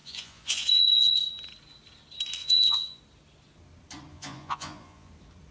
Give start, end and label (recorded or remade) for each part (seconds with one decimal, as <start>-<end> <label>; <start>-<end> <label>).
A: 0.0-1.3 remade; 1.3-2.4 recorded; 2.4-3.0 remade; 3.0-4.1 recorded; 4.1-5.1 remade; 5.1-5.5 recorded